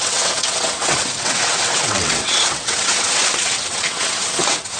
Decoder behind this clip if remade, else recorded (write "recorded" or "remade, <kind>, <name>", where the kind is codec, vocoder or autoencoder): remade, vocoder, WaveNeXt